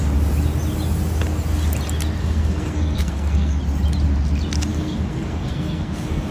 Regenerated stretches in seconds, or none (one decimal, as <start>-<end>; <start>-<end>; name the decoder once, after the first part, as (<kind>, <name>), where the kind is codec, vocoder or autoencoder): 2.2-3.6 (codec, SNAC); 4.7-6.3